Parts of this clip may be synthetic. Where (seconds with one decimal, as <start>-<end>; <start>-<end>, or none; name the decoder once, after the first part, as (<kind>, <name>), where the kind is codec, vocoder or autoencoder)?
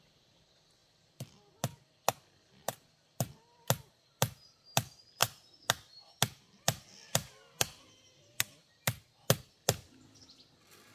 none